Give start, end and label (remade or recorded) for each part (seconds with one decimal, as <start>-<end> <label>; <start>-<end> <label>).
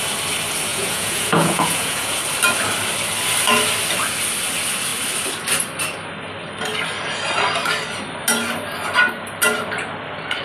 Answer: 0.0-0.7 recorded; 0.7-2.2 remade; 2.2-10.4 recorded